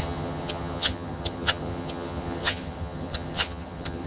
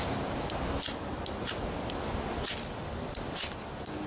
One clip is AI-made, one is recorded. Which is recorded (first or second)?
second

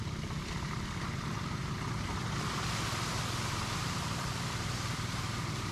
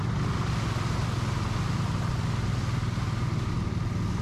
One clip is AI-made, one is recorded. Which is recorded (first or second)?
second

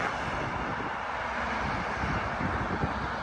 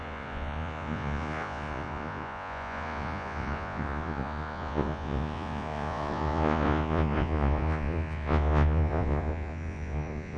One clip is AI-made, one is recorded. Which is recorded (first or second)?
first